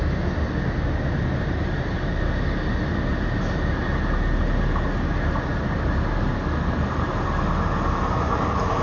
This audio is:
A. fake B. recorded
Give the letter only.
B